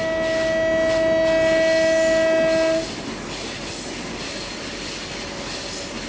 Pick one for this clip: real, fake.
real